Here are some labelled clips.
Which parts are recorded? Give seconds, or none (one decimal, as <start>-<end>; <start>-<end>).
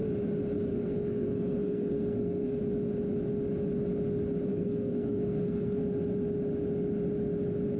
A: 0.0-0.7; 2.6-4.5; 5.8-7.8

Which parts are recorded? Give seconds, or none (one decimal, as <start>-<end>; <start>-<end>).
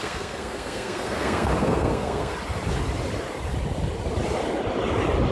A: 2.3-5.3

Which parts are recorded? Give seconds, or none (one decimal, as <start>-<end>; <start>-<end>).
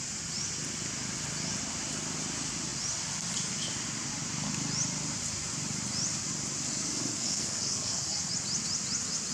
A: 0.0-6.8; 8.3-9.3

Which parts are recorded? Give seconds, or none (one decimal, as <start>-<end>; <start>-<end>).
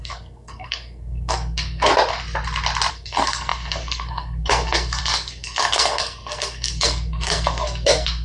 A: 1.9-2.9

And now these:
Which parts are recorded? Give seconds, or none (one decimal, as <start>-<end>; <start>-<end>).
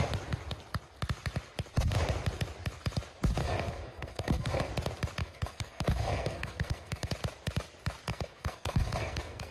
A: 0.0-3.4; 4.7-5.2; 7.1-8.1